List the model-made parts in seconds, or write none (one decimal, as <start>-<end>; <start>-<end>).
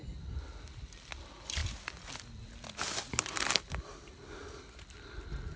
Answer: none